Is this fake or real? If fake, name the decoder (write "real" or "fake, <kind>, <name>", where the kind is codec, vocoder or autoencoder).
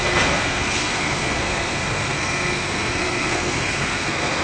fake, codec, SNAC